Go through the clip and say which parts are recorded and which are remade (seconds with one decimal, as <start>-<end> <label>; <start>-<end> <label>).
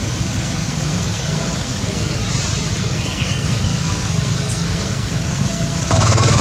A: 0.0-2.2 remade; 2.2-2.8 recorded; 2.8-6.4 remade